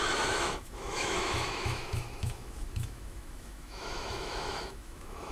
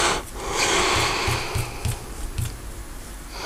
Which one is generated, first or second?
first